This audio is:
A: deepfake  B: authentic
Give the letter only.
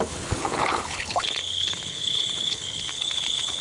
A